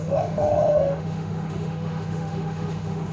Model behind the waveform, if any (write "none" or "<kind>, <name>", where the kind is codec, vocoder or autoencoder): autoencoder, DAC-VAE